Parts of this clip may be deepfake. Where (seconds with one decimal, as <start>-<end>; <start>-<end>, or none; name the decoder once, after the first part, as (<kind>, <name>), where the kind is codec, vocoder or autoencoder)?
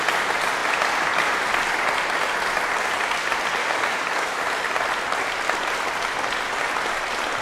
3.6-4.4 (codec, DAC)